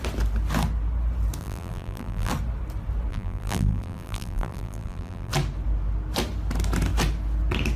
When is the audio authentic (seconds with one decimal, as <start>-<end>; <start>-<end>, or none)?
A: 0.0-1.4; 2.3-3.1; 5.3-7.8